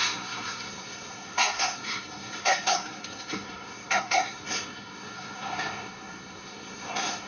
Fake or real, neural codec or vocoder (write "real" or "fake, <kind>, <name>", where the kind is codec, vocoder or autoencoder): fake, codec, SNAC